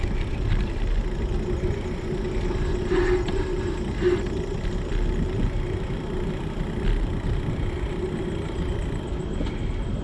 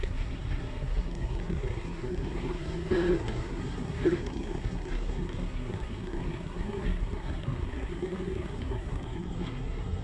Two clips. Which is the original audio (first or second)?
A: first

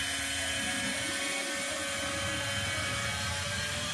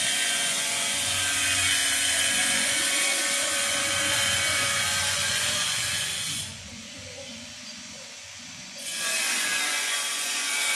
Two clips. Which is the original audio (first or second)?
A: first